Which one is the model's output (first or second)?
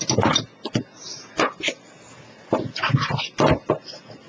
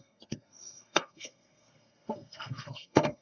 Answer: second